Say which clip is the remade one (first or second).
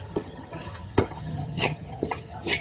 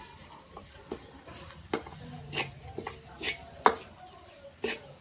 first